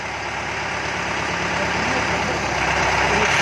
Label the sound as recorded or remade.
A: recorded